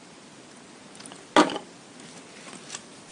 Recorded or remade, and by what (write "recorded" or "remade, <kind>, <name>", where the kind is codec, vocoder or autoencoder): recorded